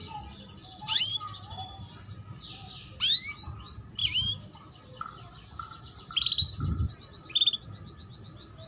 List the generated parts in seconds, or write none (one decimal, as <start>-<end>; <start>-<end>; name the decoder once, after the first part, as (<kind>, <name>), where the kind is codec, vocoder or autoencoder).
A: none